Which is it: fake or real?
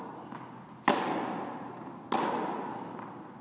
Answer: real